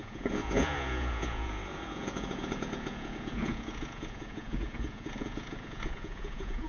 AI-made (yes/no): yes